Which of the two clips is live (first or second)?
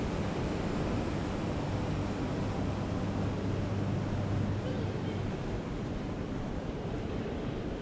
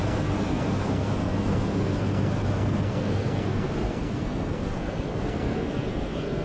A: first